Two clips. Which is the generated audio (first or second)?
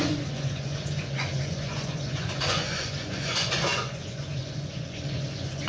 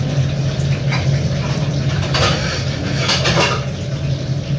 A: first